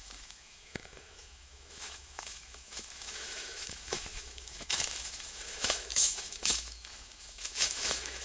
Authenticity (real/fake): fake